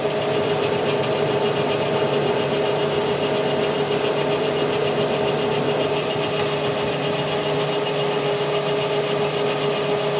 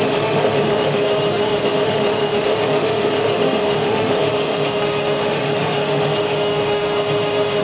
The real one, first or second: first